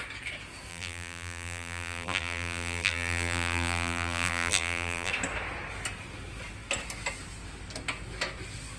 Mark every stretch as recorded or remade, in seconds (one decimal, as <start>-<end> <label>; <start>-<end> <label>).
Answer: 0.0-0.7 recorded; 0.7-5.1 remade; 5.1-8.8 recorded